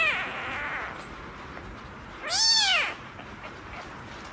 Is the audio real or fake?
real